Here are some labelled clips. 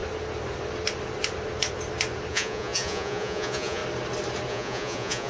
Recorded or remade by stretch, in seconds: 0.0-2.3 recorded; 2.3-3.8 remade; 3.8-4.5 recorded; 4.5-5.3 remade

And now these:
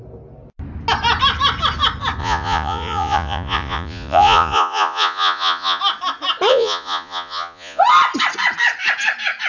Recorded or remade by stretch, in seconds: 0.0-2.2 recorded; 2.2-5.8 remade; 5.8-6.5 recorded; 6.5-7.8 remade; 7.8-9.5 recorded

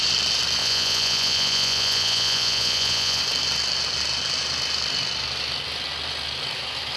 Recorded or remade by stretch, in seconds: 0.0-0.6 recorded; 0.6-3.2 remade; 3.2-7.0 recorded

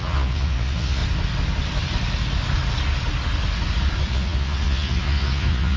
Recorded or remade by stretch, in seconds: 0.0-1.0 remade; 1.0-4.1 recorded; 4.1-5.8 remade

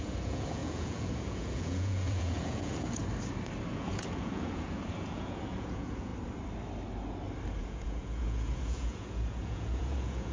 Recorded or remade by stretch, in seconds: 0.0-3.0 remade; 3.0-3.7 recorded; 3.7-6.1 remade; 6.1-7.6 recorded; 7.6-10.3 remade

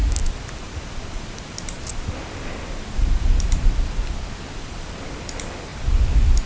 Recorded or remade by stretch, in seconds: 0.0-6.5 recorded

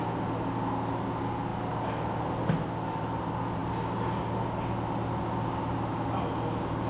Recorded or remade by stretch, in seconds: 0.0-6.9 recorded